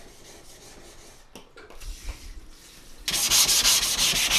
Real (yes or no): yes